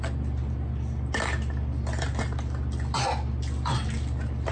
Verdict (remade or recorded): recorded